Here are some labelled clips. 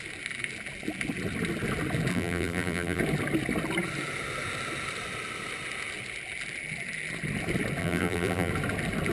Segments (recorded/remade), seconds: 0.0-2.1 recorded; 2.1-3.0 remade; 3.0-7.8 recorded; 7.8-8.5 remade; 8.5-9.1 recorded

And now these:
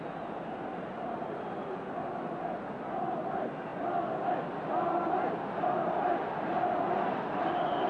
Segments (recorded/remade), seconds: 0.0-7.9 recorded

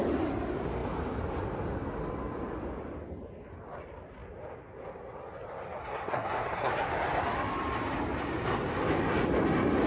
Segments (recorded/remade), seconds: 0.0-5.8 recorded; 5.8-6.7 remade; 6.7-9.9 recorded

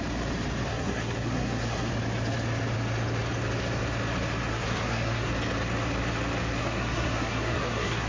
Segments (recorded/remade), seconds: 0.0-0.7 recorded; 0.7-1.9 remade; 1.9-4.5 recorded; 4.5-5.3 remade; 5.3-6.6 recorded; 6.6-8.1 remade

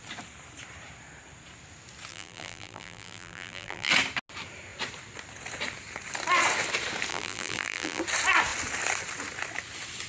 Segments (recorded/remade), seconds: 0.0-2.1 recorded; 2.1-3.9 remade; 3.9-7.1 recorded; 7.1-8.0 remade; 8.0-10.1 recorded

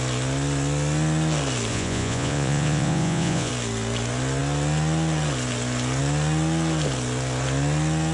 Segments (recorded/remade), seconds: 0.0-1.7 recorded; 1.7-3.5 remade; 3.5-8.1 recorded

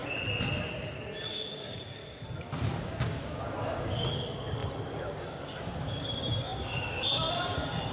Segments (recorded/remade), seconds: 0.0-1.3 recorded; 1.3-2.0 remade; 2.0-2.8 recorded; 2.8-7.9 remade